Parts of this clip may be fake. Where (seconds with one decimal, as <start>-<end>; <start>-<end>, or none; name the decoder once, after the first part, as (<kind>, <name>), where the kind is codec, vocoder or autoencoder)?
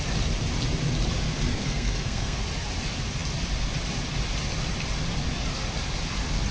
1.5-2.4 (codec, SNAC)